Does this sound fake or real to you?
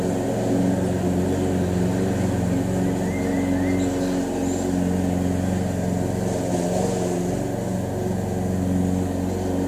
real